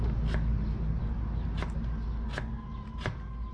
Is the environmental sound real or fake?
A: real